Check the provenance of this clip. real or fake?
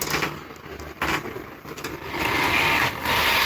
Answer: real